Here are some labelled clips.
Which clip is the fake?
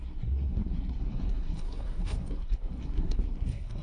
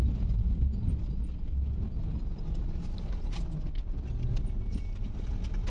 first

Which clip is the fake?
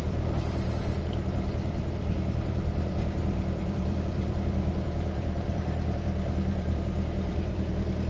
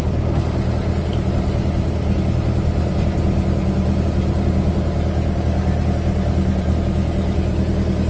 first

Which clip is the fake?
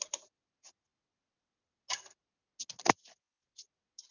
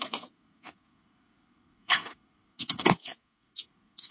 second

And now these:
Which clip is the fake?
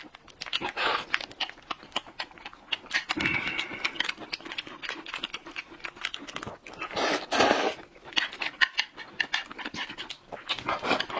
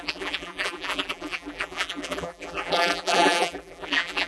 second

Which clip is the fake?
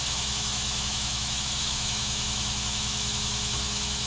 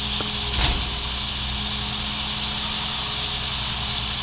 first